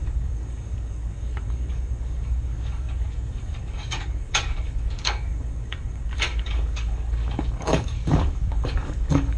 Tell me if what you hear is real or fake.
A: fake